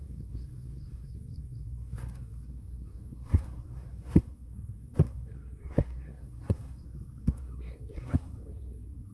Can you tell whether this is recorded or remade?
remade